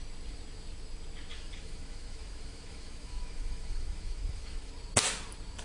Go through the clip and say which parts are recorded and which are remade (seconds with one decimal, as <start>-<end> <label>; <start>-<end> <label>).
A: 0.0-1.3 recorded; 1.3-4.7 remade; 4.7-5.6 recorded